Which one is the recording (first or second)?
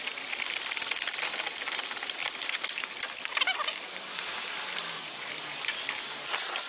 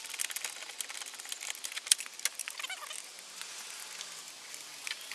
second